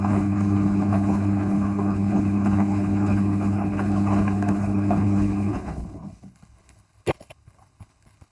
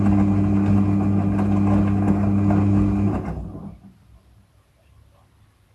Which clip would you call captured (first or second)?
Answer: second